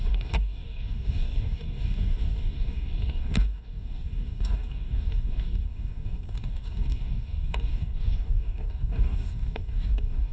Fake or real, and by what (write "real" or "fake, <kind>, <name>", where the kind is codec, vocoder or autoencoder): fake, codec, DAC